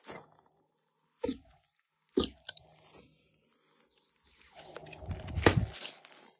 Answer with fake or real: real